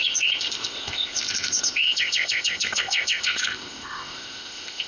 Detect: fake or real fake